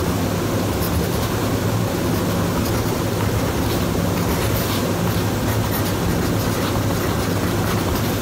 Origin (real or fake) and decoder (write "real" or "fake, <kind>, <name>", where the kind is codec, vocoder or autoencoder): real